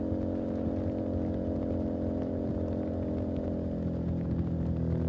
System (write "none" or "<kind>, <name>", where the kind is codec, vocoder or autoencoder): none